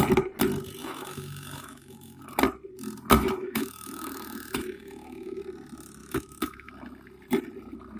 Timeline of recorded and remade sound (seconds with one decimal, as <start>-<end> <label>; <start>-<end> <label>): 0.0-0.8 recorded; 0.8-2.2 remade; 2.2-3.4 recorded; 3.4-5.4 remade; 5.4-6.0 recorded; 6.0-6.7 remade; 6.7-8.0 recorded